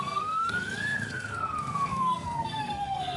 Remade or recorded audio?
remade